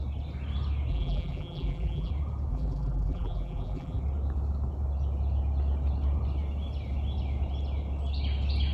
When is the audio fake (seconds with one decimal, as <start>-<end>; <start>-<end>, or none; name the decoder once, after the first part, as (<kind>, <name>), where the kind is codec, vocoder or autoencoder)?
0.9-2.1 (vocoder, BigVGAN v2); 2.5-4.0

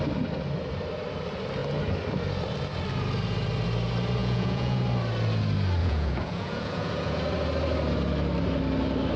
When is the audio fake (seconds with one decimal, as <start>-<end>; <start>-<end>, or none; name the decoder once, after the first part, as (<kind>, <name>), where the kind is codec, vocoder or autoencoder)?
4.2-4.8 (vocoder, Vocos); 5.8-7.2